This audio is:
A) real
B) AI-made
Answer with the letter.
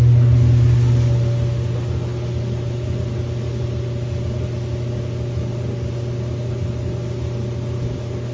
A